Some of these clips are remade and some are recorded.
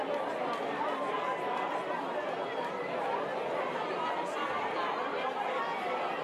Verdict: recorded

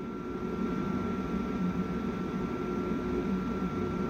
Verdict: recorded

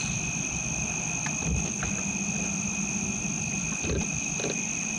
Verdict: recorded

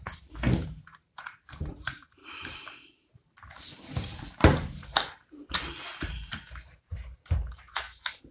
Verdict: remade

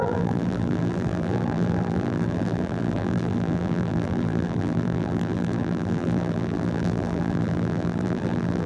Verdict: remade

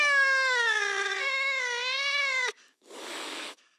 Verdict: remade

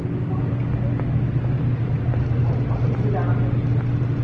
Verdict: recorded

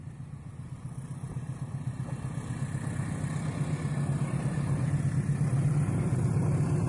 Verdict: remade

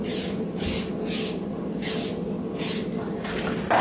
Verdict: recorded